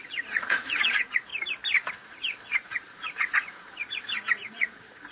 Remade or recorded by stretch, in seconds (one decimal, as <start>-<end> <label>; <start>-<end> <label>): 0.0-1.3 remade; 1.3-1.9 recorded; 1.9-5.1 remade